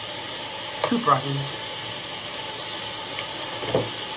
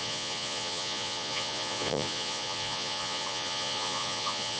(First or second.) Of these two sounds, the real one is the first